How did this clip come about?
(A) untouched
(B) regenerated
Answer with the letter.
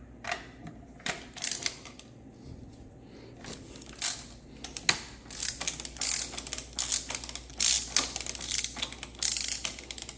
A